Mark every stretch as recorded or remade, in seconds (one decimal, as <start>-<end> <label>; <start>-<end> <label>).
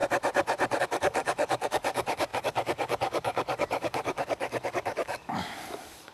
0.0-0.8 recorded; 0.8-6.1 remade